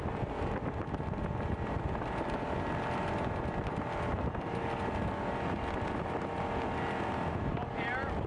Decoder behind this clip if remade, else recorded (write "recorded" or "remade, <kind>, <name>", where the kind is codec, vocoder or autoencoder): recorded